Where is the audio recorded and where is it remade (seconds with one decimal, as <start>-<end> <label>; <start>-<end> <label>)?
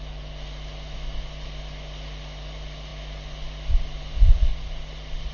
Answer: 0.0-5.3 recorded